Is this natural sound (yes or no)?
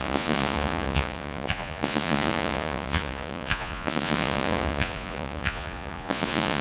no